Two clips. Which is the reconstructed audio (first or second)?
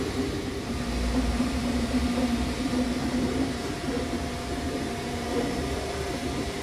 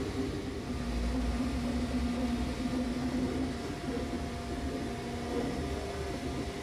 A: first